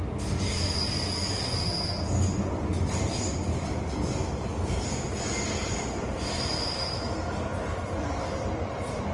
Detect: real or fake real